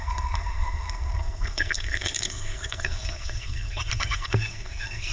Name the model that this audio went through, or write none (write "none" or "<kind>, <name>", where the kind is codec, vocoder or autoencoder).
codec, SNAC